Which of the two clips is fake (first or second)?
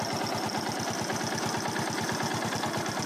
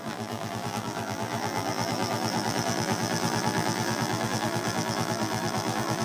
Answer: second